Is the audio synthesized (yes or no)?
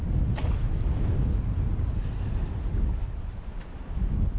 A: no